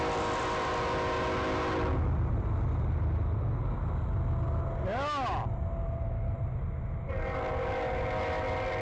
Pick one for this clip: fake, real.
real